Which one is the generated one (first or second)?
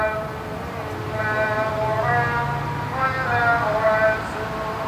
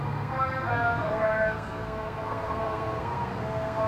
second